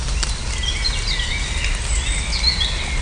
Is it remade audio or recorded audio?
recorded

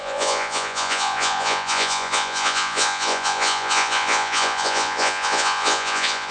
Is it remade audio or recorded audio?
remade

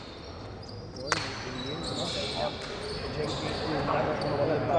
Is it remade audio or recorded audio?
recorded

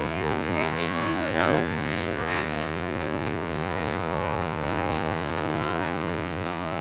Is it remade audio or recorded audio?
remade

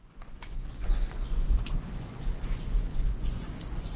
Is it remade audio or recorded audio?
remade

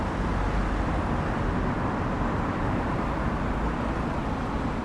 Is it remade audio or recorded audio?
recorded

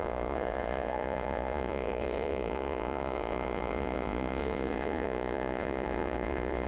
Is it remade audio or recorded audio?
remade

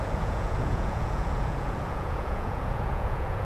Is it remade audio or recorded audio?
remade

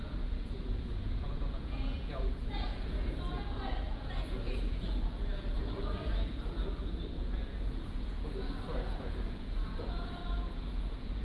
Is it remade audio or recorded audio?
remade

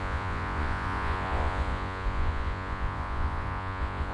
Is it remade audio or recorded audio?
remade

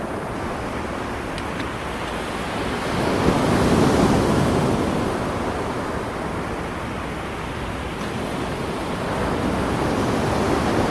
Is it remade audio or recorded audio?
recorded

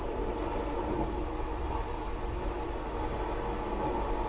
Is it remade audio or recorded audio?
recorded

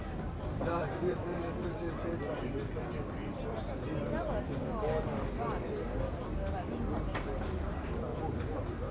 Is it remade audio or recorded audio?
recorded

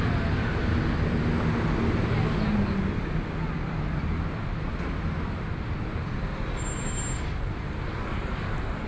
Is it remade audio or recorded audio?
recorded